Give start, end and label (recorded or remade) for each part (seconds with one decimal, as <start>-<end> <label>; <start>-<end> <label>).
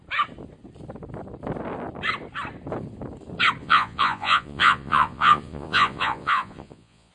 0.0-3.6 recorded; 3.6-7.1 remade